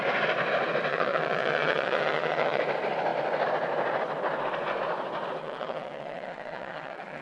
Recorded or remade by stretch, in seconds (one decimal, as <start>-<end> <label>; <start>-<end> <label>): 0.0-0.9 recorded; 0.9-2.6 remade; 2.6-5.4 recorded; 5.4-7.2 remade